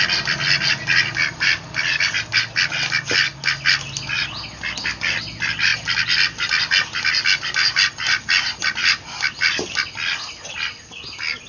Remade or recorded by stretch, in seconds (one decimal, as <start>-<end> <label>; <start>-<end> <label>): 0.0-11.5 recorded

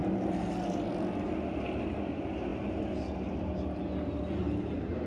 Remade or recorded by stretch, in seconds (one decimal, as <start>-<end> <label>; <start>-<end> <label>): 0.0-5.1 recorded

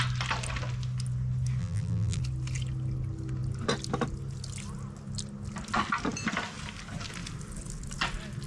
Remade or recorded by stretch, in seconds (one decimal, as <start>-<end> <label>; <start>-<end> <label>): 0.0-1.6 recorded; 1.6-2.2 remade; 2.2-8.5 recorded

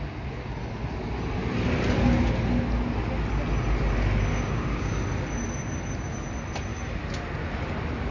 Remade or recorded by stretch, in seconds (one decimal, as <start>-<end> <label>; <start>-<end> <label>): 0.0-4.3 recorded; 4.3-4.9 remade; 4.9-8.1 recorded

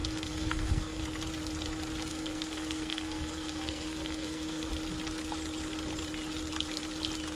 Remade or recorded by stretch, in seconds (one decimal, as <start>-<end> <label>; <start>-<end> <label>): 0.0-1.0 remade; 1.0-2.1 recorded; 2.1-4.7 remade; 4.7-7.4 recorded

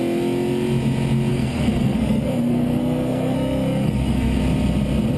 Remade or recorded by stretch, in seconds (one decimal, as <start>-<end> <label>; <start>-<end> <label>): 0.0-1.3 recorded; 1.3-4.4 remade; 4.4-5.2 recorded

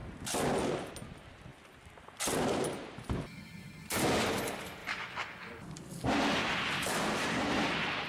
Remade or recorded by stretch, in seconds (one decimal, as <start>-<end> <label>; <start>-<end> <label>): 0.0-0.9 remade; 0.9-1.5 recorded; 1.5-4.0 remade; 4.0-6.4 recorded; 6.4-7.5 remade; 7.5-8.1 recorded